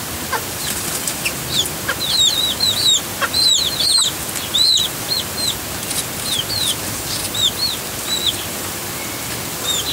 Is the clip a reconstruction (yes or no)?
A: no